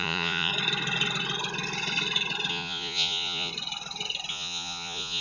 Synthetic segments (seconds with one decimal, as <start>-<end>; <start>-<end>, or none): 0.0-0.5; 2.5-3.5; 4.3-5.2